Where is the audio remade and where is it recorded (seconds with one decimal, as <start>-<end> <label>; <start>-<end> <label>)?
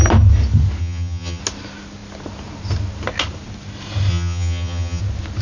0.0-0.8 recorded; 0.8-1.4 remade; 1.4-4.1 recorded; 4.1-5.0 remade; 5.0-5.4 recorded